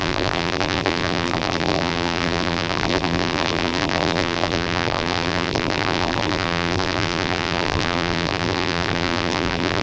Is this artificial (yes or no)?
yes